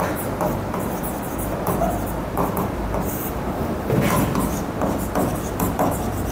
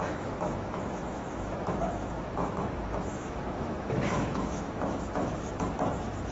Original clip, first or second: first